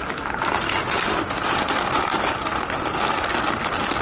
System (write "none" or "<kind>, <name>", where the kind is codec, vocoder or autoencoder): none